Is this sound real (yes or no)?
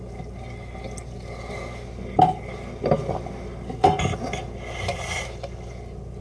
yes